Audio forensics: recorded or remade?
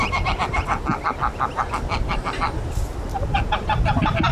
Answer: recorded